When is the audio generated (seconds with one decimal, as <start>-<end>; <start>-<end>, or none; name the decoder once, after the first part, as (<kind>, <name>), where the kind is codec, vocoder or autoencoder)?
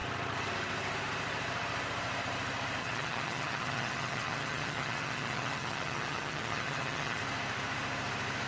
2.8-7.2 (vocoder, HiFi-GAN)